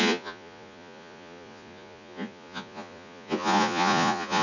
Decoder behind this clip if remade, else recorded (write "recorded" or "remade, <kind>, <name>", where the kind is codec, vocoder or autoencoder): remade, vocoder, Vocos